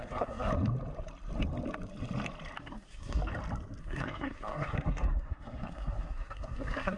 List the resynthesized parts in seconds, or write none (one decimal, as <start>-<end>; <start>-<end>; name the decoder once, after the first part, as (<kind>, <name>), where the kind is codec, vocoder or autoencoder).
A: 0.0-0.5 (codec, SNAC); 2.6-3.2; 3.8-7.0